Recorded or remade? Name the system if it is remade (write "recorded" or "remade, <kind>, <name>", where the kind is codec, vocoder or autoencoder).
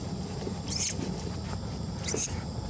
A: recorded